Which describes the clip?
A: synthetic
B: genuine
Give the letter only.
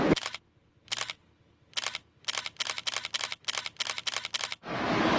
B